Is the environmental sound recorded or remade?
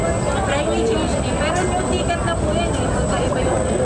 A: recorded